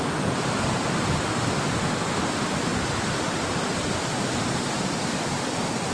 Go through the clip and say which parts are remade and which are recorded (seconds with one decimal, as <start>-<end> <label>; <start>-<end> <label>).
0.0-5.9 recorded